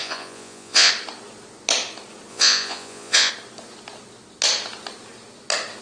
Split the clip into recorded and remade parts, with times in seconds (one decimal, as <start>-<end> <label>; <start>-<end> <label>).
0.0-0.9 remade; 0.9-2.3 recorded; 2.3-3.3 remade; 3.3-5.8 recorded